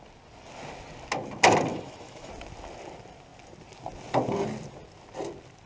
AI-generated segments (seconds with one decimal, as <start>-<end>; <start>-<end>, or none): 1.7-2.3